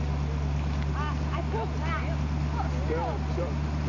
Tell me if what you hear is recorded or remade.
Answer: recorded